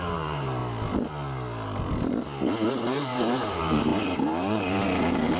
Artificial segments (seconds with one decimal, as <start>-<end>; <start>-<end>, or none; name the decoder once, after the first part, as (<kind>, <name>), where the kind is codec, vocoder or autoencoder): 0.0-0.6 (vocoder, BigVGAN v2); 2.7-5.4